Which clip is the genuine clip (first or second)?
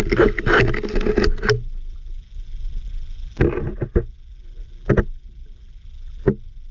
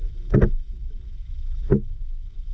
first